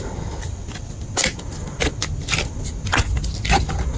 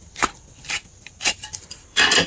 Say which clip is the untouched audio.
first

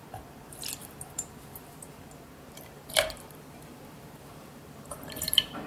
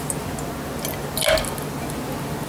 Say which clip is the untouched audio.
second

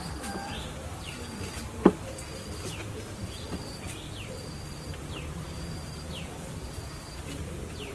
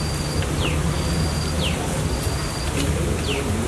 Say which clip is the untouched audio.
second